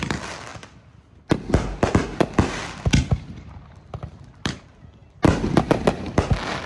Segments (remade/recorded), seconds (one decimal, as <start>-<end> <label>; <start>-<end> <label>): 0.0-0.5 recorded; 0.5-1.4 remade; 1.4-6.7 recorded